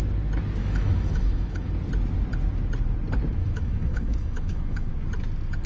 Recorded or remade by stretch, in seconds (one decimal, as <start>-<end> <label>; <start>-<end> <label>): 0.0-0.6 recorded; 0.6-1.7 remade; 1.7-3.4 recorded; 3.4-4.9 remade; 4.9-5.7 recorded